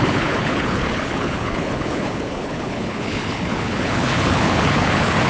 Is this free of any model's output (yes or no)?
no